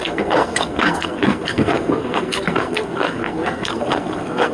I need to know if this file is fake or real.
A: fake